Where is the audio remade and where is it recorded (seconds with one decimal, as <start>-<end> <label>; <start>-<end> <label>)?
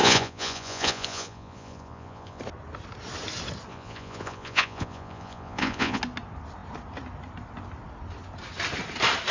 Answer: 0.0-2.4 remade; 2.4-3.7 recorded; 3.7-6.0 remade; 6.0-9.3 recorded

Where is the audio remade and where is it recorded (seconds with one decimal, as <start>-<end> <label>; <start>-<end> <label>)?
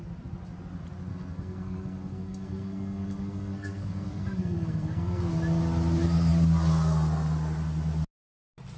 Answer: 0.0-1.1 recorded; 1.1-5.3 remade; 5.3-8.8 recorded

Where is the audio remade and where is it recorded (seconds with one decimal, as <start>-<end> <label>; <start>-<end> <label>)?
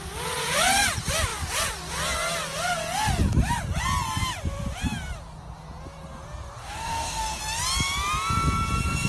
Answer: 0.0-6.6 recorded; 6.6-7.4 remade; 7.4-9.1 recorded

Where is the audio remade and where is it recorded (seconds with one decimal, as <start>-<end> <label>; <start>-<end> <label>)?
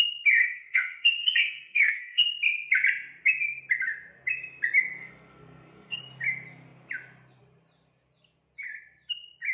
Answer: 0.0-0.4 recorded; 0.4-2.3 remade; 2.3-5.0 recorded; 5.0-6.0 remade; 6.0-9.5 recorded